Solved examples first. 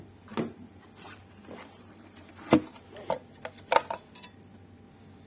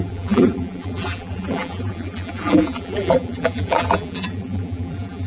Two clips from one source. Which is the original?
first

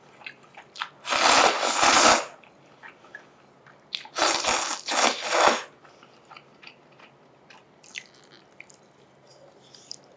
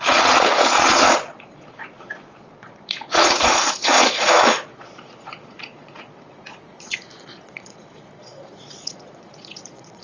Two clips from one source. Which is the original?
first